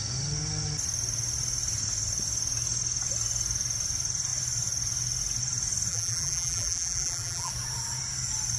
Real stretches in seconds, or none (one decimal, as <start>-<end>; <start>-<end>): 0.0-5.9; 7.5-8.6